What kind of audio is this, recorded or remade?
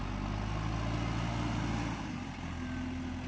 recorded